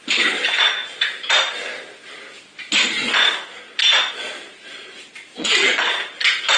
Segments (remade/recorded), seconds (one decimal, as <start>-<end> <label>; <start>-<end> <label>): 0.0-5.4 recorded; 5.4-5.9 remade; 5.9-6.6 recorded